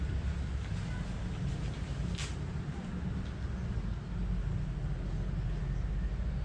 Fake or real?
real